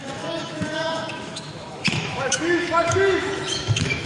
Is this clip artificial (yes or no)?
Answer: yes